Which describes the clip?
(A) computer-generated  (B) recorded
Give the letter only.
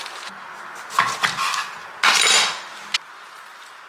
B